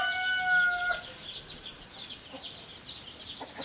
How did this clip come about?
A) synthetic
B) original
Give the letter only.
B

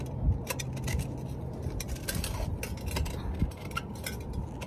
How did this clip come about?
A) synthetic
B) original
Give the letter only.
B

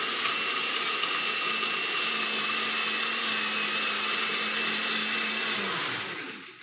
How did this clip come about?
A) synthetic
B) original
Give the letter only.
B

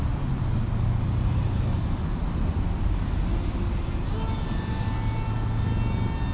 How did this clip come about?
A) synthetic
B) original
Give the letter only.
B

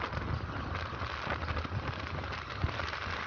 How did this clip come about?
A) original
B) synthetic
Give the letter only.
A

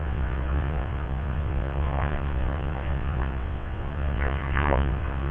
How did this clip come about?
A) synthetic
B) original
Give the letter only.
A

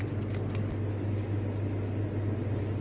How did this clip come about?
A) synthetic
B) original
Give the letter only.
B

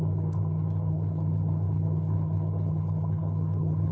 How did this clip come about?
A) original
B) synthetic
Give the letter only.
B